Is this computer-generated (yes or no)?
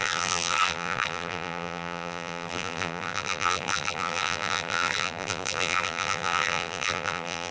yes